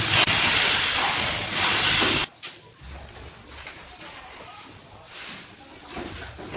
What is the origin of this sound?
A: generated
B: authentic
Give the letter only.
B